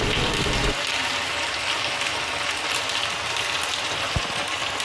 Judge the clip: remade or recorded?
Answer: recorded